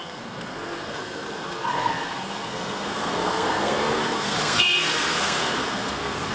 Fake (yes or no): yes